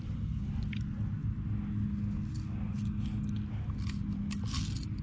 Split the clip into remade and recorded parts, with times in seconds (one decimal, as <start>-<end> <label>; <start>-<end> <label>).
0.0-5.0 recorded